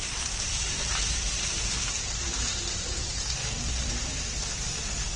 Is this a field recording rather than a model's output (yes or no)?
no